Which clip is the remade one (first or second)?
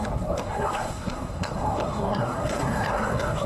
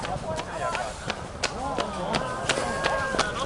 first